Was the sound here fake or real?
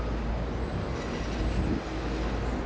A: real